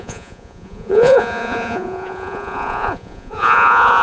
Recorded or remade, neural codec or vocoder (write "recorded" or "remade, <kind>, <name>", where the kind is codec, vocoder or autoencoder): remade, vocoder, Vocos